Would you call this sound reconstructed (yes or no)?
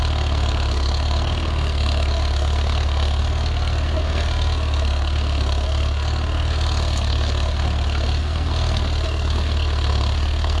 yes